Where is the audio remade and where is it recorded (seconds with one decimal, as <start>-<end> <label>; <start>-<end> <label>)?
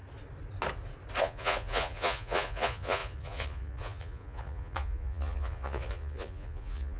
0.0-1.2 recorded; 1.2-7.0 remade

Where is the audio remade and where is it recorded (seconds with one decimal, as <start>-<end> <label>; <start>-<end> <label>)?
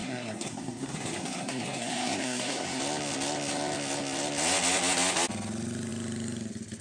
0.0-2.8 remade; 2.8-6.8 recorded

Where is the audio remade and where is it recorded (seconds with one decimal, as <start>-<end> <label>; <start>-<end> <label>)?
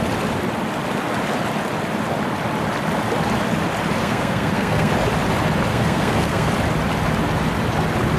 0.0-4.0 recorded; 4.0-4.9 remade; 4.9-5.7 recorded; 5.7-6.5 remade; 6.5-8.2 recorded